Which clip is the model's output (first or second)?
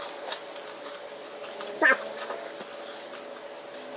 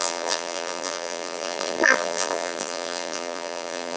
second